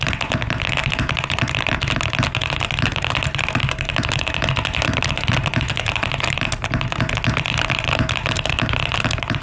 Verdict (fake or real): real